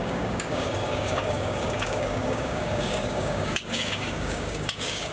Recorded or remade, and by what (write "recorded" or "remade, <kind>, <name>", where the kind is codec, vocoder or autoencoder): remade, codec, DAC